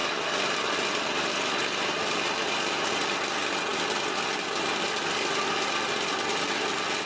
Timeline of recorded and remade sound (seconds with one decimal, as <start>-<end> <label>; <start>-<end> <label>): 0.0-7.1 recorded